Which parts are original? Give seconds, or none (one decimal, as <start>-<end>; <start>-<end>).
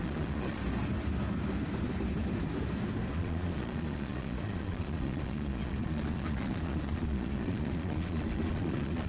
0.6-3.1